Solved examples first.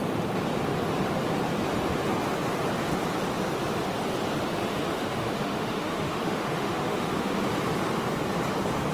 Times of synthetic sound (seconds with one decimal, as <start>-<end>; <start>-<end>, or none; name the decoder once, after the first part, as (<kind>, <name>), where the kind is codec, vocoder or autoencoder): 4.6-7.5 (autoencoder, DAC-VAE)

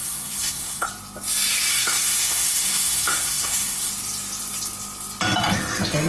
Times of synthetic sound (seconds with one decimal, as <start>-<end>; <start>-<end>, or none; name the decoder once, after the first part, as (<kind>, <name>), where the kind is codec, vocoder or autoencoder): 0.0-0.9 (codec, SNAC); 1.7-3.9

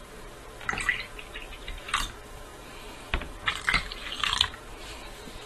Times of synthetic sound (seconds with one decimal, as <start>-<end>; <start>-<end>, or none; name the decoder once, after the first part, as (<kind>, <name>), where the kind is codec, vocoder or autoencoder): 0.0-5.5 (vocoder, BigVGAN v2)